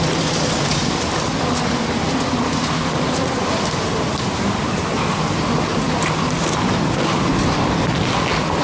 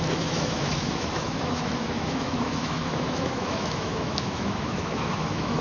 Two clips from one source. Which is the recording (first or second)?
first